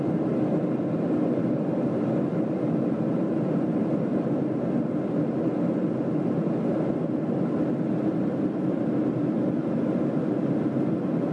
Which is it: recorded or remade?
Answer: recorded